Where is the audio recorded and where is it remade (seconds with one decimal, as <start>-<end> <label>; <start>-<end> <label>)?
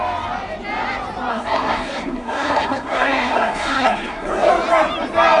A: 0.0-1.3 recorded; 1.3-4.5 remade; 4.5-5.4 recorded